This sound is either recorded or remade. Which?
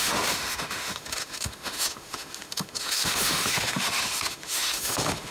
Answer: remade